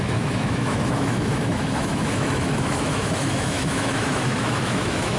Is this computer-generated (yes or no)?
yes